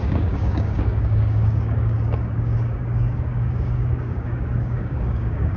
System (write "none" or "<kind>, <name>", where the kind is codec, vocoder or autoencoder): codec, DAC